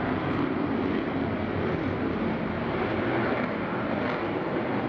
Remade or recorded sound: recorded